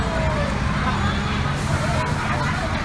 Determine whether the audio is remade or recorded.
recorded